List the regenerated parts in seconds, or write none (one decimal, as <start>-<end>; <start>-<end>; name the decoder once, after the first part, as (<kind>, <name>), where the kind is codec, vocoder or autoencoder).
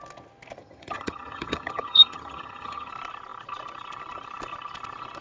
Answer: 0.6-2.9 (vocoder, HiFi-GAN)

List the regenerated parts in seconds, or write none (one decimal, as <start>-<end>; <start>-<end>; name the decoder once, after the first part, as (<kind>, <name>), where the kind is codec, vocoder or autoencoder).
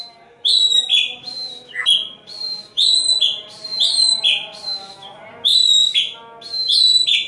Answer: none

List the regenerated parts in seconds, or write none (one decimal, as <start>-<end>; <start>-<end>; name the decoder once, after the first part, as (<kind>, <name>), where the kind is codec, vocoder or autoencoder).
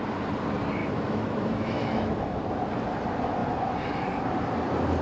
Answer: 0.8-2.4 (autoencoder, DAC-VAE)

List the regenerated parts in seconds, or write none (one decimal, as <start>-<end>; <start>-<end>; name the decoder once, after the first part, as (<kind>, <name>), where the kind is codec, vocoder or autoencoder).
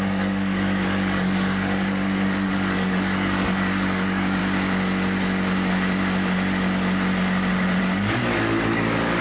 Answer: 0.0-4.4 (codec, DAC); 7.8-9.2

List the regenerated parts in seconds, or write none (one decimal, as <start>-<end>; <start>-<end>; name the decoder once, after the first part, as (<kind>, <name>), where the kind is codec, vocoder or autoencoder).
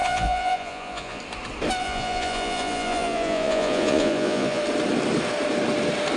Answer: 0.0-1.2 (vocoder, Vocos); 1.8-4.6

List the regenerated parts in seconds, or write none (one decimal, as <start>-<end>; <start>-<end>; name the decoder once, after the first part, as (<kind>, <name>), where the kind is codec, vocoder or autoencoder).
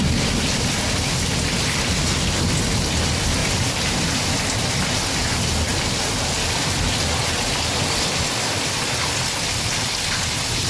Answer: 3.4-4.4 (vocoder, BigVGAN v2)